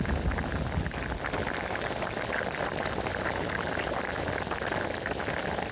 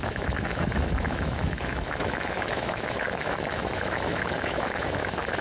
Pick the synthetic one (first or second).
second